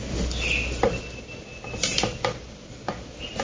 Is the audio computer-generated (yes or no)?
no